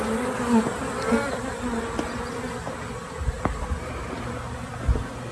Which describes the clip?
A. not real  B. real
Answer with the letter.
B